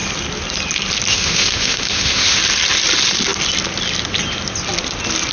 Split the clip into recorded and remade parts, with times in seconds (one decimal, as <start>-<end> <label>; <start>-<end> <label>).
0.0-1.1 recorded; 1.1-2.4 remade; 2.4-5.3 recorded